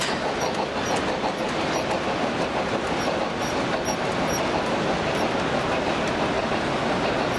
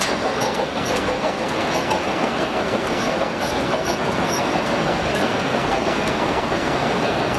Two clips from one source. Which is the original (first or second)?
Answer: first